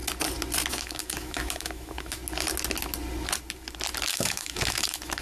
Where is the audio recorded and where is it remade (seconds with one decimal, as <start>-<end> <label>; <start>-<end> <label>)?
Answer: 0.0-0.7 recorded; 0.7-2.2 remade; 2.2-4.1 recorded; 4.1-5.2 remade